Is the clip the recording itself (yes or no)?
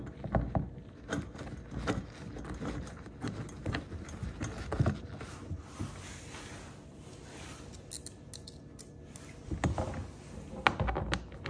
yes